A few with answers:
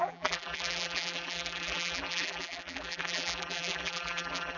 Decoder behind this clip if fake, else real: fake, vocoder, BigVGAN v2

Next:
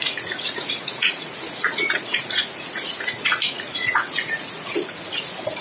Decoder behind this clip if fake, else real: fake, vocoder, Vocos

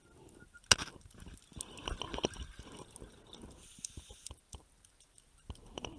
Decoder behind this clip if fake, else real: real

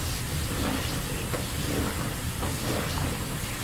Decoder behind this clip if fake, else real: real